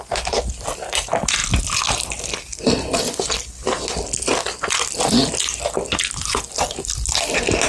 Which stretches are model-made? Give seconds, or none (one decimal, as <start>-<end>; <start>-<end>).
none